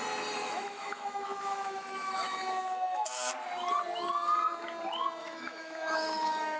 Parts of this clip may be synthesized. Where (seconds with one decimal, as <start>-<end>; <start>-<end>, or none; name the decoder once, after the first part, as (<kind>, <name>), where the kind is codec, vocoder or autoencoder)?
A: 0.4-3.3 (autoencoder, DAC-VAE); 5.2-6.6